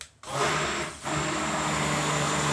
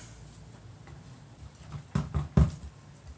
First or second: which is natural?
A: first